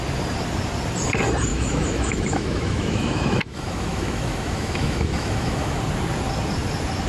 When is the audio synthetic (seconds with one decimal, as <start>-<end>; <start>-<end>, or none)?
1.5-5.8